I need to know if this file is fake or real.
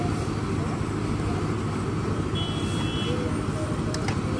real